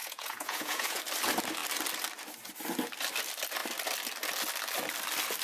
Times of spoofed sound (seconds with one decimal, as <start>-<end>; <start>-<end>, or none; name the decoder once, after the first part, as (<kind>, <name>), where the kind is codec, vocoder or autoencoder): 0.0-1.0 (vocoder, Vocos)